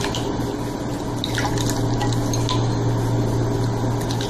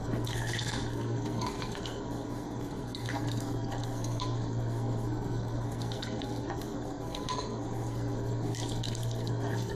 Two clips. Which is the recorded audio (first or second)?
first